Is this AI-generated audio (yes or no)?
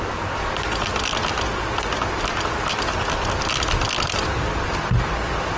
no